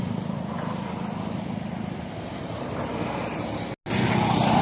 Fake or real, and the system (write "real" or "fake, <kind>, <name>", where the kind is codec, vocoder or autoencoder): real